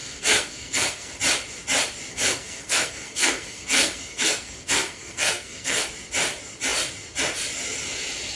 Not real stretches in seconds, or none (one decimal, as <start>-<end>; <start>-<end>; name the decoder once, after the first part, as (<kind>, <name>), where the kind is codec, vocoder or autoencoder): 0.0-1.2 (codec, SNAC); 2.1-5.9